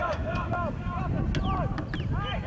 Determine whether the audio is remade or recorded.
recorded